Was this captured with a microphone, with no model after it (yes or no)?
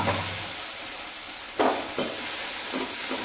yes